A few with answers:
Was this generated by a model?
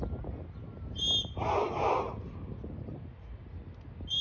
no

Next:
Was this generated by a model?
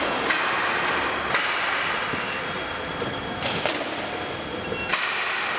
no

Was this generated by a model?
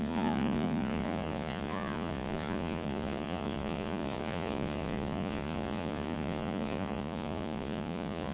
yes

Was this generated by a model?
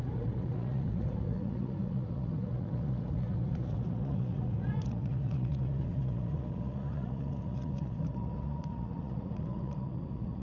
yes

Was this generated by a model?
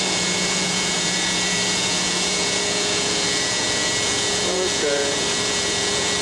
yes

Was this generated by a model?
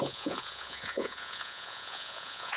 yes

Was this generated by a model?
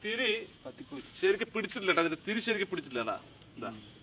yes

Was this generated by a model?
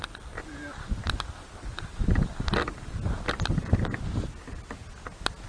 no